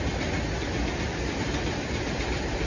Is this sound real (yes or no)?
yes